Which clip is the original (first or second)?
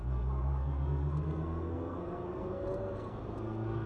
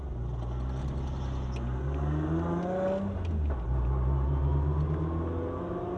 second